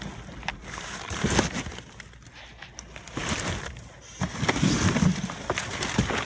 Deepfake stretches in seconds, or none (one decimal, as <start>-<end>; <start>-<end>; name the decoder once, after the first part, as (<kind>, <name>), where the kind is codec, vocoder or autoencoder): none